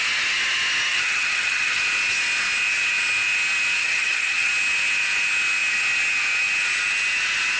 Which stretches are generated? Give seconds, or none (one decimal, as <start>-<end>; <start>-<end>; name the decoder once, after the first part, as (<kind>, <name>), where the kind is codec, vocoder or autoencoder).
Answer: 0.9-1.8 (vocoder, HiFi-GAN); 3.8-4.5